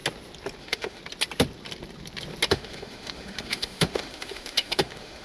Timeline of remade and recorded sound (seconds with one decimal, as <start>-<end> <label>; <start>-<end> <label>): 0.0-0.6 recorded; 0.6-1.0 remade; 1.0-2.5 recorded; 2.5-5.2 remade